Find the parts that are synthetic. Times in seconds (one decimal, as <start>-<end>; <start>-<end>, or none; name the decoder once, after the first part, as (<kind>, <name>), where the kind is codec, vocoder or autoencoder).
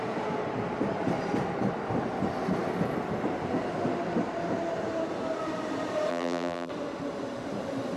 6.1-6.7 (vocoder, BigVGAN v2)